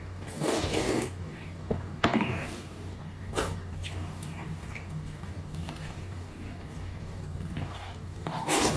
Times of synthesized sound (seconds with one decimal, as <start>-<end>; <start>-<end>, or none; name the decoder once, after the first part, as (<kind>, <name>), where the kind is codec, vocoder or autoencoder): 0.0-8.8 (codec, DAC)